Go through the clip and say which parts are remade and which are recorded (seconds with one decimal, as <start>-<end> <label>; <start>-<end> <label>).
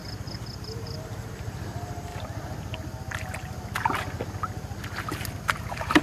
0.0-0.6 recorded; 0.6-2.1 remade; 2.1-5.4 recorded; 5.4-6.0 remade